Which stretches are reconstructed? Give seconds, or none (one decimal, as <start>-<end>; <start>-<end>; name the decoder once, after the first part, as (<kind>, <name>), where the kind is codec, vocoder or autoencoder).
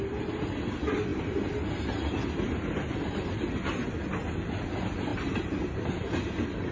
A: none